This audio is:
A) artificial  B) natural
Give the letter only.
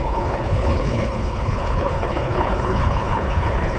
A